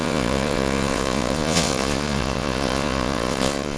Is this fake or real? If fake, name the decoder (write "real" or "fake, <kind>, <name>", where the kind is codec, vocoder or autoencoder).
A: fake, vocoder, Vocos